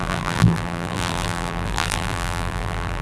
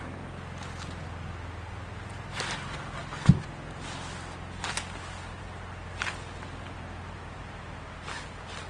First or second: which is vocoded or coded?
first